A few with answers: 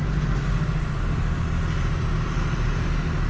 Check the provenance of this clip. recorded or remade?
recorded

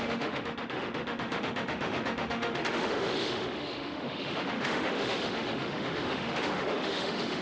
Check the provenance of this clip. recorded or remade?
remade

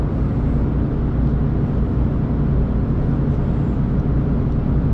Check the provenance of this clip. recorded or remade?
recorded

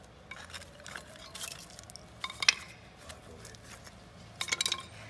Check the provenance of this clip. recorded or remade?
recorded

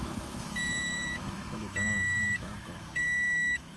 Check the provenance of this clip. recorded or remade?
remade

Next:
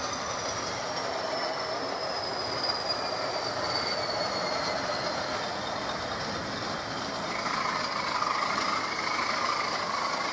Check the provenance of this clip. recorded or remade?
recorded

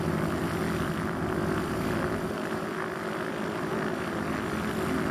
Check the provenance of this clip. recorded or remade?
recorded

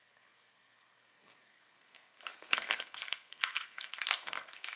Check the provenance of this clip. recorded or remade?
remade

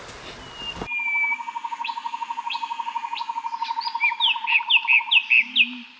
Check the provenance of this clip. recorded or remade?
recorded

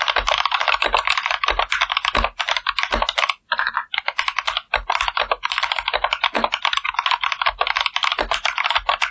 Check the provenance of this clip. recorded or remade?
recorded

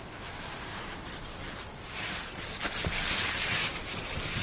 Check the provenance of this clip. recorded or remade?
recorded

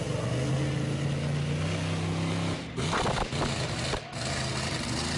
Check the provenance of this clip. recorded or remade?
recorded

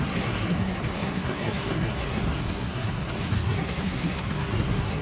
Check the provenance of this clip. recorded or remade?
remade